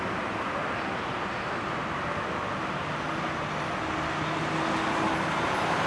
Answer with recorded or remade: recorded